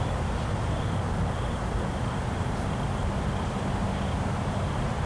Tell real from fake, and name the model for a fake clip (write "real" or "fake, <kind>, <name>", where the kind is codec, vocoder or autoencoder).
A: real